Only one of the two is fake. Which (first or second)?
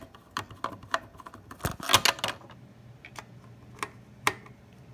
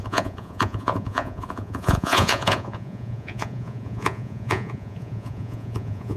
second